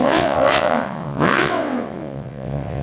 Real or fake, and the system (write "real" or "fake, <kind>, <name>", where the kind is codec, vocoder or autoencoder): fake, vocoder, WaveNeXt